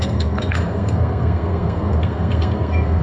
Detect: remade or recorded remade